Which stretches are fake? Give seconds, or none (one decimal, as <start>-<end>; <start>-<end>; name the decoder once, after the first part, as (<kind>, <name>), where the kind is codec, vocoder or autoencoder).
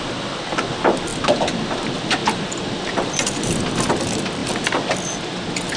none